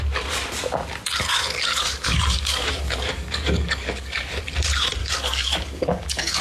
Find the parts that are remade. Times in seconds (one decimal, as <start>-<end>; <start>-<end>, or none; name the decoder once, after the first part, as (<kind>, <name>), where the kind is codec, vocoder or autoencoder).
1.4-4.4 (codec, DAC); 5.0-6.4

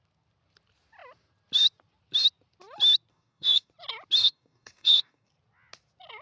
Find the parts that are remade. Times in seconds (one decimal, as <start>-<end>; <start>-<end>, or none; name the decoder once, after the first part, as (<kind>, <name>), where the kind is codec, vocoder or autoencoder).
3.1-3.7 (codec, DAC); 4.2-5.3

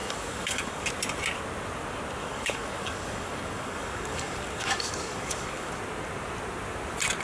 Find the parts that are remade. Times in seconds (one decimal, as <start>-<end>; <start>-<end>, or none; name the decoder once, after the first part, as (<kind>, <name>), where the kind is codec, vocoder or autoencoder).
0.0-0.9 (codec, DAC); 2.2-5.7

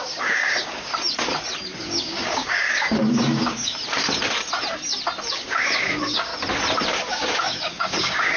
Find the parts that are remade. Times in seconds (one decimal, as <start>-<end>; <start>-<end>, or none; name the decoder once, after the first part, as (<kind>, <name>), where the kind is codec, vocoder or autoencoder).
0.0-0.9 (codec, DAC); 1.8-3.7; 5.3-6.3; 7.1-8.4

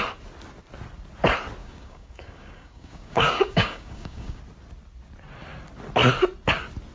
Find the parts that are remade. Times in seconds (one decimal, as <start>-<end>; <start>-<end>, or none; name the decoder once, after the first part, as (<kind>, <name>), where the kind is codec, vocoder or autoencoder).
1.6-4.4 (codec, DAC)